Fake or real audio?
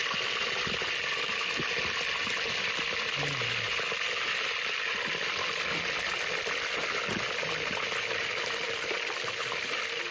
real